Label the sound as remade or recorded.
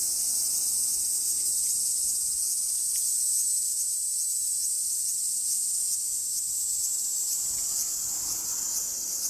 recorded